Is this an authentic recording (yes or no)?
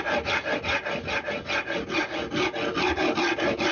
yes